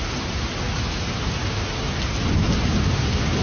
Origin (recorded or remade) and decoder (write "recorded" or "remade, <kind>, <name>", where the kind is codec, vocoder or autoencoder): recorded